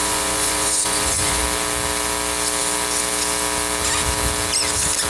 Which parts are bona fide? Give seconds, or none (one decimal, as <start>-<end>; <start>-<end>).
1.4-5.1